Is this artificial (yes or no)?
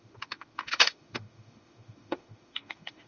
yes